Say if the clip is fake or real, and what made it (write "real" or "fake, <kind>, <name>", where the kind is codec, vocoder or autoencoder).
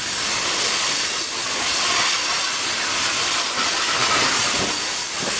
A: real